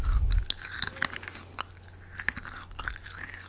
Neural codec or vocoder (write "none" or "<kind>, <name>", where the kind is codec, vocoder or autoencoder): none